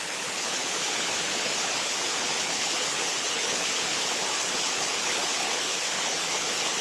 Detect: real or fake fake